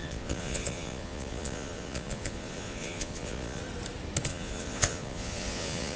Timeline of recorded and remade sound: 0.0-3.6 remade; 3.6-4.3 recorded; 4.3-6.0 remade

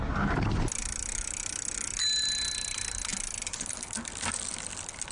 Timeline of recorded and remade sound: 0.0-5.1 recorded